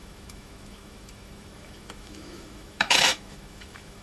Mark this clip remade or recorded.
remade